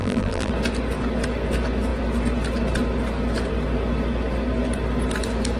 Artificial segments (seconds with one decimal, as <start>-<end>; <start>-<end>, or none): 0.0-0.5